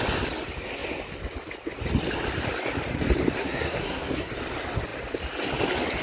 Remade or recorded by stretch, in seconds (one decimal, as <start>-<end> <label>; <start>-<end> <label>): 0.0-3.4 recorded; 3.4-4.3 remade; 4.3-6.0 recorded